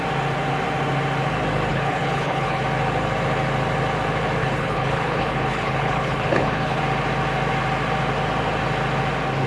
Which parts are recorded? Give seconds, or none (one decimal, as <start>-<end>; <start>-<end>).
0.0-1.7; 2.6-4.4; 6.8-9.5